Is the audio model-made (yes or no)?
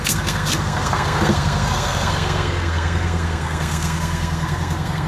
yes